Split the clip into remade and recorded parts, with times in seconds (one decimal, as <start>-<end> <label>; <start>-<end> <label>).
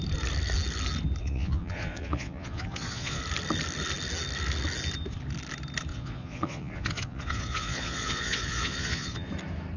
0.0-1.2 recorded; 1.2-3.2 remade; 3.2-5.9 recorded; 5.9-9.3 remade; 9.3-9.8 recorded